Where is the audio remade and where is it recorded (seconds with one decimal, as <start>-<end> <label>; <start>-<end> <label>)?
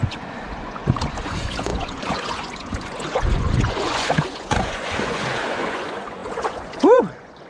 0.0-7.5 remade